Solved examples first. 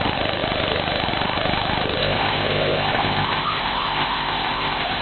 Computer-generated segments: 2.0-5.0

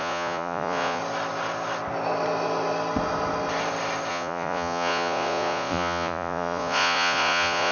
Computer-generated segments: 0.0-1.0; 4.1-7.7

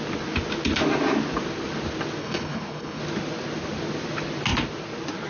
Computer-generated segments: 2.2-3.0

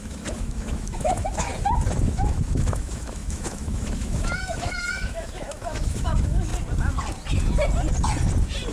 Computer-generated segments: 0.0-1.5; 2.0-6.5

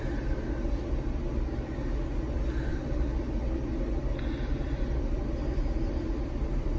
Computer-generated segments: 2.7-6.8

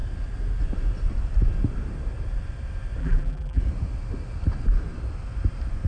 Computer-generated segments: 3.0-3.6